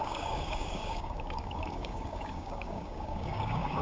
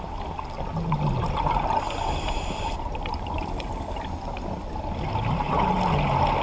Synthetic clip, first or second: first